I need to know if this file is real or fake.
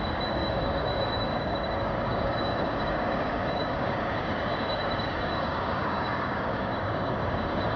fake